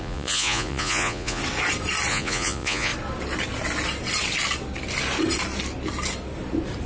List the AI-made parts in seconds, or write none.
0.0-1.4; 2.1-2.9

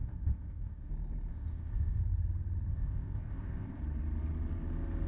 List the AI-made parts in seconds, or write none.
0.0-0.9; 1.3-2.0; 2.7-3.8

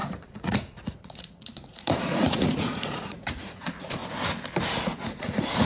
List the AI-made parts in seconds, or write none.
0.0-4.0; 5.1-5.6

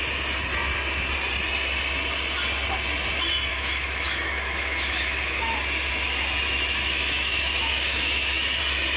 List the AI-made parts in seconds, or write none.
3.5-8.6

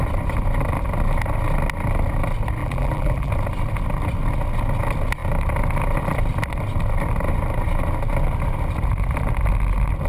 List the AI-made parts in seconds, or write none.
2.6-3.3

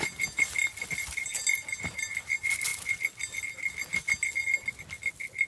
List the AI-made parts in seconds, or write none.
none